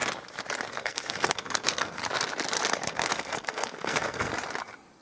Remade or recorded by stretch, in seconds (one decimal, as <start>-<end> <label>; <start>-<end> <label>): 0.0-0.7 recorded; 0.7-2.0 remade; 2.0-2.7 recorded; 2.7-4.3 remade; 4.3-5.0 recorded